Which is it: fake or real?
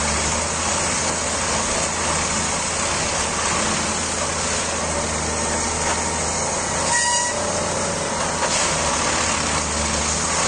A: real